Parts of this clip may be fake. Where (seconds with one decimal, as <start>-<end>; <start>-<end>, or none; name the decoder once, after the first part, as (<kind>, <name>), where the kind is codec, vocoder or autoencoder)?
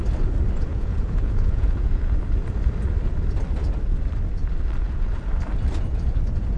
0.7-2.2 (vocoder, Vocos)